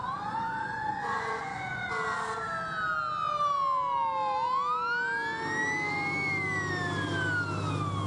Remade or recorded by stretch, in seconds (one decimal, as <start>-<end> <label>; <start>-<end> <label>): 0.0-1.9 remade; 1.9-8.1 recorded

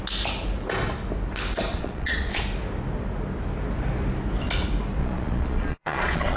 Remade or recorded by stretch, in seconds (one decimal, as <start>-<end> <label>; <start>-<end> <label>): 0.0-1.7 recorded; 1.7-2.4 remade; 2.4-5.0 recorded; 5.0-6.4 remade

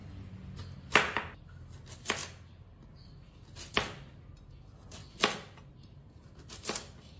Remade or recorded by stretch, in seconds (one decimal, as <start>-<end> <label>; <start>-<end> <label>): 0.0-7.2 recorded

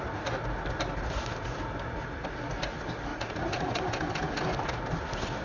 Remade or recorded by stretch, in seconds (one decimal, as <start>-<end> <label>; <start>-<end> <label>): 0.0-3.1 recorded; 3.1-3.8 remade; 3.8-5.4 recorded

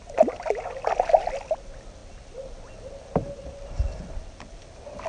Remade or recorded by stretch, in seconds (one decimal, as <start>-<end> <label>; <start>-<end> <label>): 0.0-5.1 recorded

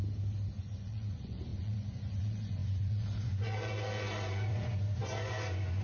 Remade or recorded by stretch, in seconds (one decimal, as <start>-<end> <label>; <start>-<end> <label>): 0.0-0.6 recorded; 0.6-5.8 remade

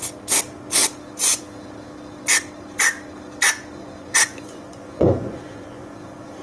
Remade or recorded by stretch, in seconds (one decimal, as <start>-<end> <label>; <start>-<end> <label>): 0.0-3.8 recorded; 3.8-6.4 remade

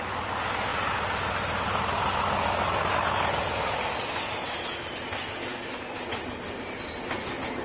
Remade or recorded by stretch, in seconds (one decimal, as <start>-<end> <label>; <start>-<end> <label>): 0.0-7.6 recorded